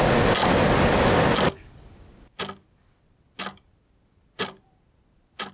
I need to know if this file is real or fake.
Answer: real